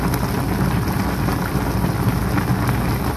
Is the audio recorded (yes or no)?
yes